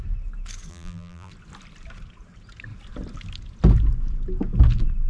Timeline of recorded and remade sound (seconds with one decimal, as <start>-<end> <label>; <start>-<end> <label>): 0.0-0.7 recorded; 0.7-1.3 remade; 1.3-5.1 recorded